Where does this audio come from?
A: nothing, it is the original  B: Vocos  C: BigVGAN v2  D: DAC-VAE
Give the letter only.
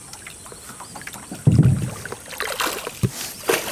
A